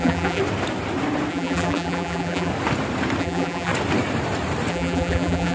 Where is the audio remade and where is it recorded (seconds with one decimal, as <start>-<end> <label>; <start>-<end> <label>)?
0.0-0.4 remade; 0.4-1.3 recorded; 1.3-2.5 remade; 2.5-3.2 recorded; 3.2-3.7 remade; 3.7-4.7 recorded; 4.7-5.5 remade